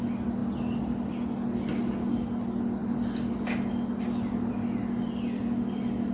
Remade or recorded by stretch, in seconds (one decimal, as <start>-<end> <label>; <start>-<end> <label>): 0.0-6.1 recorded